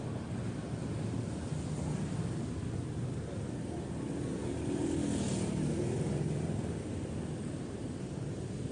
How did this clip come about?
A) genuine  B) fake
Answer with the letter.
A